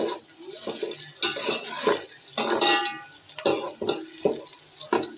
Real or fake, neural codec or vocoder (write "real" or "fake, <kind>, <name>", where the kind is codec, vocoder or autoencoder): real